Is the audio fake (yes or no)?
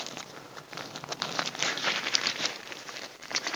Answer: yes